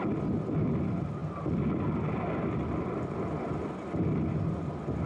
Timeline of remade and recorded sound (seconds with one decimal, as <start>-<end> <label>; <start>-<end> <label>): 0.0-5.1 recorded